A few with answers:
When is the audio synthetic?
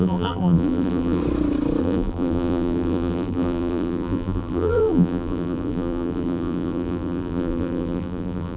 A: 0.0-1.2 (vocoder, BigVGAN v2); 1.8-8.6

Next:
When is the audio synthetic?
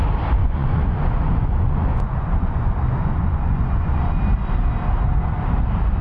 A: 0.4-4.0 (vocoder, Vocos)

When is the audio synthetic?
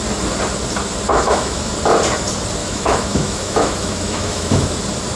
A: 1.1-1.7 (autoencoder, DAC-VAE); 2.6-4.7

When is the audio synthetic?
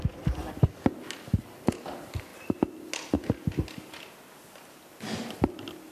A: none